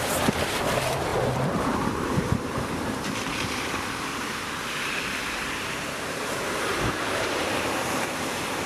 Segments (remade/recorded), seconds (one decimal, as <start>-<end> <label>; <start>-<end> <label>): 0.0-8.7 remade